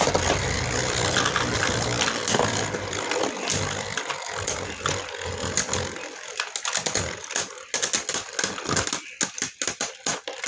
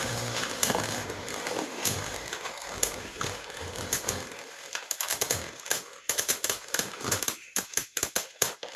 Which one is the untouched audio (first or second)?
first